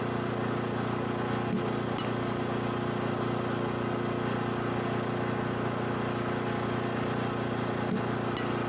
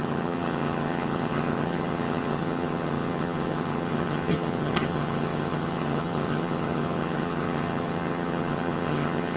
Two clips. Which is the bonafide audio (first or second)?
first